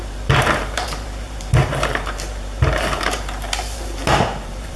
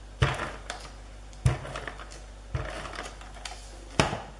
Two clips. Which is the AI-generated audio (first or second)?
first